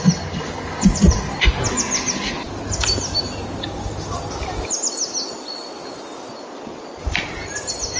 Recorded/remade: recorded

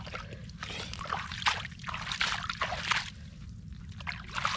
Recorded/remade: recorded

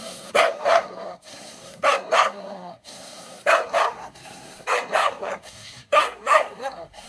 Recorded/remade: remade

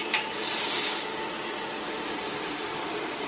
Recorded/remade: remade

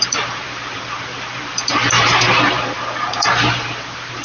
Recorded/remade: remade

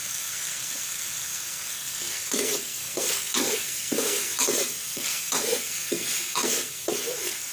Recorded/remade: remade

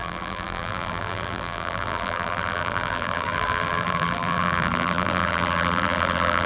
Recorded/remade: remade